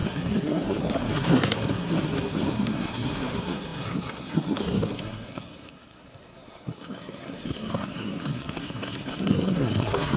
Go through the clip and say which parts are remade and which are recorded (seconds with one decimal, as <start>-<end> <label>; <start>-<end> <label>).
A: 0.0-10.2 remade